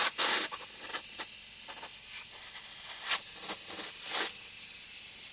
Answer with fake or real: real